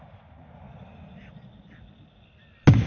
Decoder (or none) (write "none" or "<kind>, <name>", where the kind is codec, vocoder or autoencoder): none